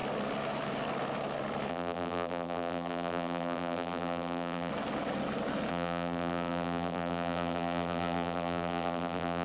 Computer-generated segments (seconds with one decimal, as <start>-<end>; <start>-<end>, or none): 1.7-4.7; 5.7-9.4